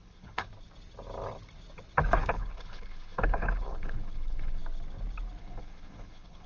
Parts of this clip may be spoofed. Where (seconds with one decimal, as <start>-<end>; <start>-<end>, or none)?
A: 0.0-0.5; 2.2-4.6; 5.4-6.5